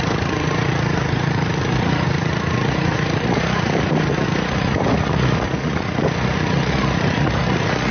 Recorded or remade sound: remade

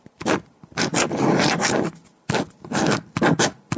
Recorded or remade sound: recorded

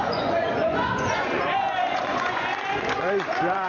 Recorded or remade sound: remade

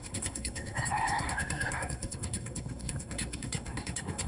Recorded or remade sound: remade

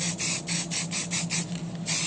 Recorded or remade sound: recorded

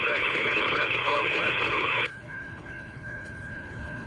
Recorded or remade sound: remade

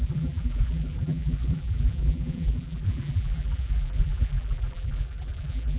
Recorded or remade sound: remade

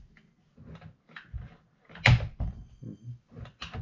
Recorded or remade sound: recorded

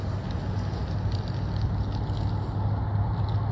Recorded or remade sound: recorded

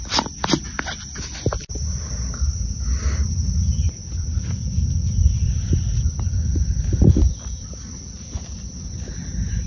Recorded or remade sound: recorded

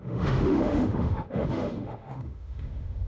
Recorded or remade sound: remade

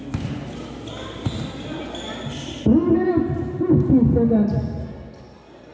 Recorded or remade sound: recorded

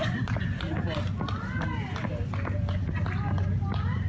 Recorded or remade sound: recorded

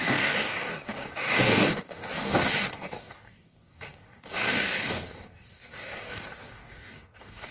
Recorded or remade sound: remade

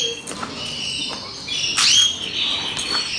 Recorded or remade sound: recorded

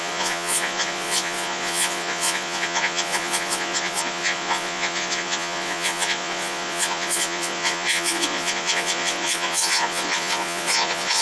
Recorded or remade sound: remade